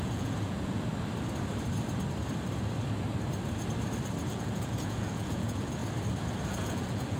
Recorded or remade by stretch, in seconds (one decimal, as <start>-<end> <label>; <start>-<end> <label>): 0.0-0.9 remade; 0.9-4.3 recorded; 4.3-5.8 remade; 5.8-6.5 recorded; 6.5-7.2 remade